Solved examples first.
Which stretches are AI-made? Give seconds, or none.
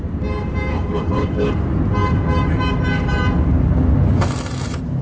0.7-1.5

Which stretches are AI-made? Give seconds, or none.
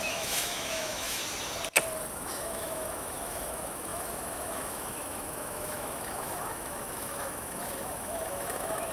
0.0-1.2; 2.1-8.9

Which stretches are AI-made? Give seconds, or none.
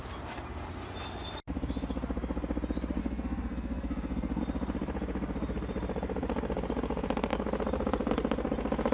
3.0-4.4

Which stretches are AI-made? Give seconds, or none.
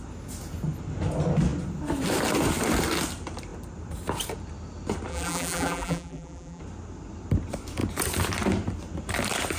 5.1-6.6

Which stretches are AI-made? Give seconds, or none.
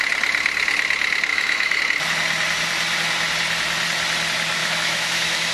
1.3-1.8; 4.6-5.5